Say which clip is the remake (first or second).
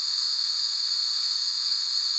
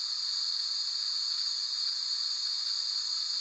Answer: first